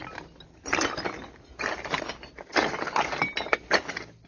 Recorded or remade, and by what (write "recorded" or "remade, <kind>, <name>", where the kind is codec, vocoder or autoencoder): recorded